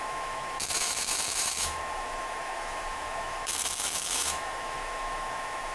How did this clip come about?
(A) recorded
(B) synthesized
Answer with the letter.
B